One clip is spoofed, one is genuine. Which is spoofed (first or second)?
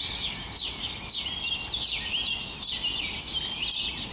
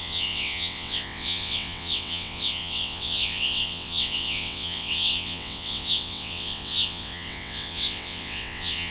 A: second